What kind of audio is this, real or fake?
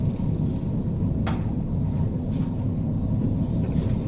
real